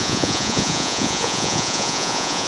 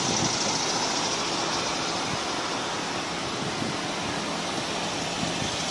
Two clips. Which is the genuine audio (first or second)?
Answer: second